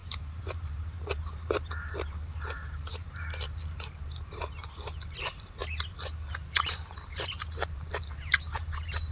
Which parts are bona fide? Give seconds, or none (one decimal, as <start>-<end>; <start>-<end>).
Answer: 5.6-6.3